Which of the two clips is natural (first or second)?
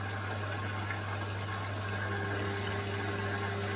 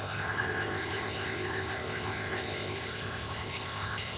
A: first